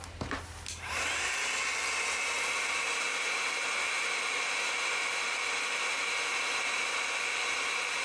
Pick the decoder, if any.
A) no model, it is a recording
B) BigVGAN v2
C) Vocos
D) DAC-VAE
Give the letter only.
A